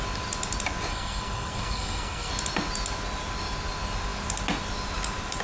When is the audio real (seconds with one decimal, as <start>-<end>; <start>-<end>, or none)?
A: 0.0-0.9; 2.3-5.4